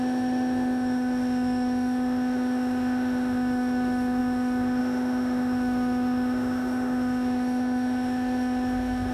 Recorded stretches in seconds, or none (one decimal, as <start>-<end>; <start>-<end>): none